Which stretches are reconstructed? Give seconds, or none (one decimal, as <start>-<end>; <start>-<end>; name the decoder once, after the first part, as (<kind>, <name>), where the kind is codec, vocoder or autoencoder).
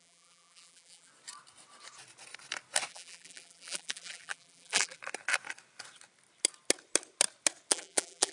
0.0-1.1 (vocoder, BigVGAN v2); 2.9-5.0; 7.7-8.3